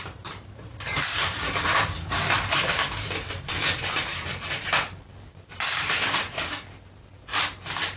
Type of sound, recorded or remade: remade